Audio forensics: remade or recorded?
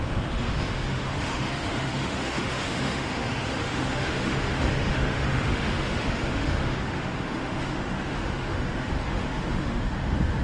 remade